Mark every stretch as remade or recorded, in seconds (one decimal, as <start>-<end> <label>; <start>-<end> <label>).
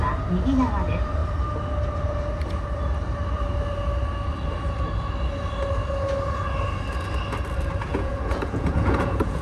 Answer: 0.0-7.9 recorded; 7.9-9.4 remade